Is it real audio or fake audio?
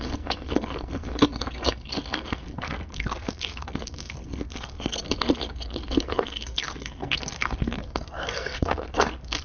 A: fake